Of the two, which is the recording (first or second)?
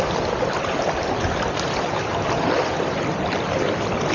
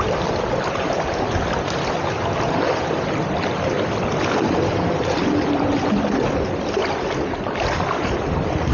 second